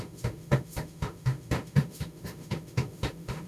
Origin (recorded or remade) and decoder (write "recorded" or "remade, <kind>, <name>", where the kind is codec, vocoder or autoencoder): remade, autoencoder, DAC-VAE